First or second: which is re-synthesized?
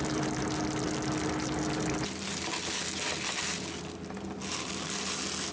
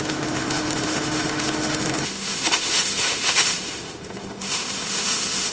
second